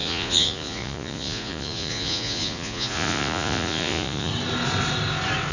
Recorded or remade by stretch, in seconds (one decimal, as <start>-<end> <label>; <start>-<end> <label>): 0.0-4.3 remade; 4.3-5.5 recorded